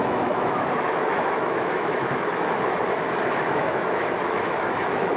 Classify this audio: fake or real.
fake